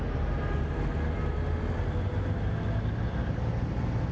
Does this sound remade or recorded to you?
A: recorded